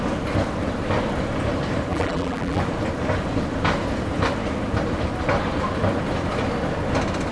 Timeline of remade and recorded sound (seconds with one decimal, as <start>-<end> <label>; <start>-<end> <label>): 0.0-1.9 recorded; 1.9-2.6 remade; 2.6-7.3 recorded